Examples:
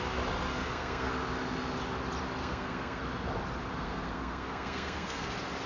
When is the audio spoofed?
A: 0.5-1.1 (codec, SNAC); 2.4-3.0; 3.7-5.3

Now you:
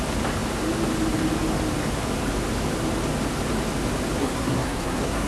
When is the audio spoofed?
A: 4.2-5.3 (codec, SNAC)